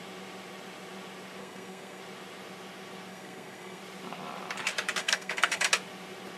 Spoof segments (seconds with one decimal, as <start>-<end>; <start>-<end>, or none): 1.4-2.0; 3.1-3.8; 5.0-5.7